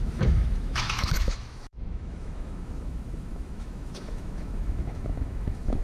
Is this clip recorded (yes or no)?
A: no